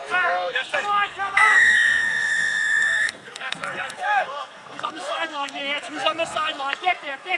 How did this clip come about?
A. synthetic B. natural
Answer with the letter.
A